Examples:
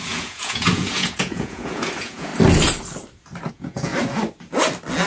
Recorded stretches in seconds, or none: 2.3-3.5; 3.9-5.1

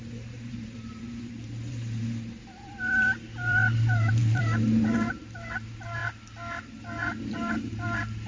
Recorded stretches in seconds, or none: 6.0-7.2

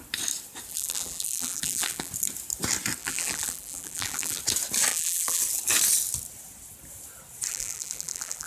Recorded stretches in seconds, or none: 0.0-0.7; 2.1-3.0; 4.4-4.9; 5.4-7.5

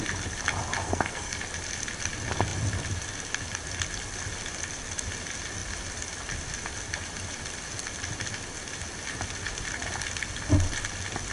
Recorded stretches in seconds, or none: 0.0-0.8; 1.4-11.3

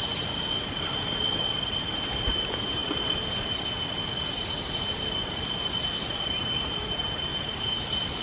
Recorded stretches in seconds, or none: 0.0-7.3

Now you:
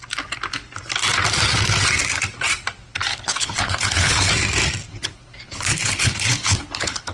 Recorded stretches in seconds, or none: 0.0-3.1; 4.3-4.9

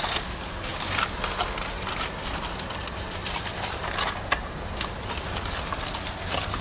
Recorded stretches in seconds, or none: 0.0-6.6